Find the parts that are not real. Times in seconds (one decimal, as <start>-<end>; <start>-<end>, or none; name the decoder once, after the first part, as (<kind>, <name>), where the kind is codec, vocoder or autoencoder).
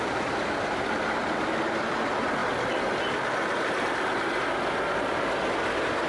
none